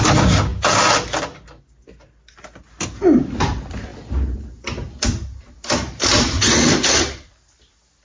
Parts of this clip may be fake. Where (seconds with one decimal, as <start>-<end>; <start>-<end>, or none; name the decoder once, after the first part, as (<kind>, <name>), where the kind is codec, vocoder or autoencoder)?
none

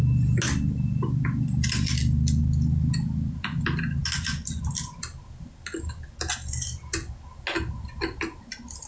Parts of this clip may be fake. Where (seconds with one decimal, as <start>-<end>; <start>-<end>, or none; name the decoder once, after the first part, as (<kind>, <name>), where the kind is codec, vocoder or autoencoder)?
none

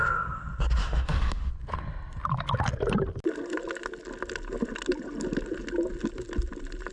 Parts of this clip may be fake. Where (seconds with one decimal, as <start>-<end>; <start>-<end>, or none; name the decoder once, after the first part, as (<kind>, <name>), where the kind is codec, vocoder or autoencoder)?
0.8-1.5 (autoencoder, DAC-VAE)

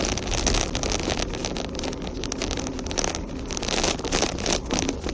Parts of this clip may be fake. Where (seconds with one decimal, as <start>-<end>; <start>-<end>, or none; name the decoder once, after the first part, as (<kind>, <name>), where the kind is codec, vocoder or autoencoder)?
none

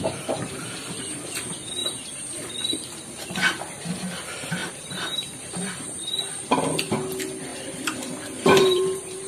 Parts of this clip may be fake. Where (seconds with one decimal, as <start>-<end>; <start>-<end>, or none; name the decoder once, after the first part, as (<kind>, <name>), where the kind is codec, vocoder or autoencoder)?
1.8-2.5 (vocoder, BigVGAN v2); 4.6-6.0; 7.5-9.3

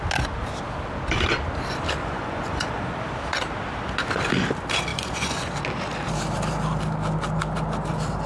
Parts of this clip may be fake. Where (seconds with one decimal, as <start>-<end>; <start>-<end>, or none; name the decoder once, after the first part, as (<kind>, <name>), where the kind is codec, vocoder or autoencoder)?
2.0-2.8 (vocoder, Vocos); 4.9-5.5